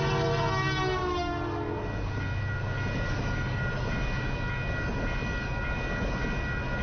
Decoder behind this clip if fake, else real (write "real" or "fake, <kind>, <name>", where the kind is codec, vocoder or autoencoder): real